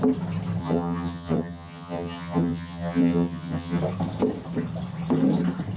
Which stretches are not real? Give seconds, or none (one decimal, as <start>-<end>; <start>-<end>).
0.6-3.8